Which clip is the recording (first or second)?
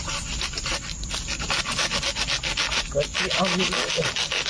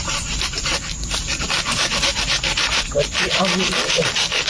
first